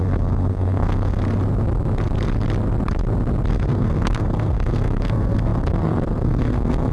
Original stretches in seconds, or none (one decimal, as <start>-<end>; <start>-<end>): 1.2-3.5